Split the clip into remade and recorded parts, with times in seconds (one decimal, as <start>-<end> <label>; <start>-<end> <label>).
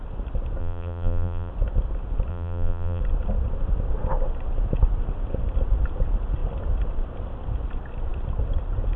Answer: 0.0-0.6 recorded; 0.6-1.5 remade; 1.5-2.3 recorded; 2.3-3.0 remade; 3.0-9.0 recorded